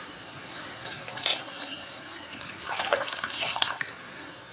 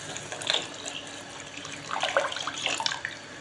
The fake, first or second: first